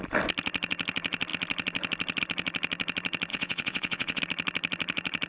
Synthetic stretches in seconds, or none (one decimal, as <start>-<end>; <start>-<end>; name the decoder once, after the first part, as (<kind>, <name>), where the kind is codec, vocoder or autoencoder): 3.3-4.2 (vocoder, Vocos)